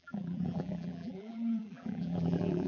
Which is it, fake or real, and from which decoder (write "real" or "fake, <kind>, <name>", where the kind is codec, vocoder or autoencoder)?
fake, vocoder, BigVGAN v2